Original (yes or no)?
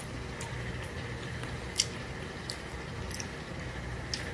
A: yes